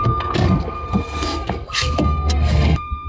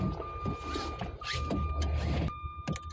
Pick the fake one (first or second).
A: first